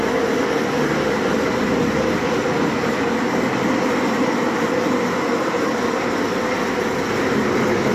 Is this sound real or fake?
real